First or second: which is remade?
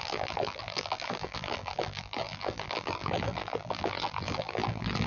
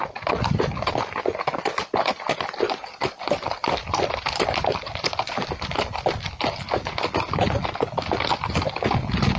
first